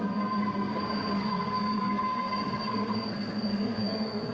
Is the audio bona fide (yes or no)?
no